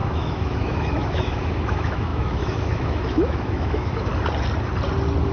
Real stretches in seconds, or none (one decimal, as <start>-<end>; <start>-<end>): 4.1-5.3